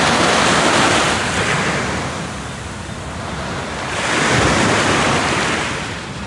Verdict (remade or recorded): recorded